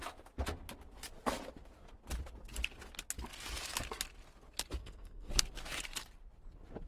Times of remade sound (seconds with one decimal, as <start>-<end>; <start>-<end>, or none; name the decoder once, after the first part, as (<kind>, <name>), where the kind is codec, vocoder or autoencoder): 4.8-5.3 (codec, SNAC)